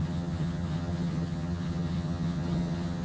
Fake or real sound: fake